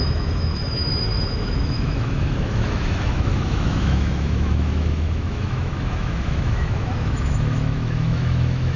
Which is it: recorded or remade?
remade